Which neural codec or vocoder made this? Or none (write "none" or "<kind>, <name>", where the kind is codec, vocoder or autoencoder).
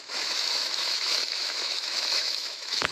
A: autoencoder, DAC-VAE